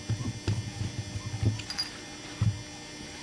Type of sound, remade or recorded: recorded